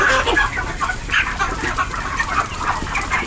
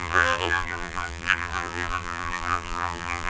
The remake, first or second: second